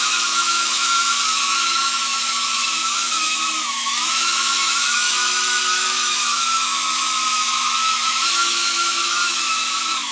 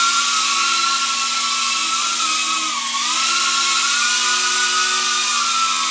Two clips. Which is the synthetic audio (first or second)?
first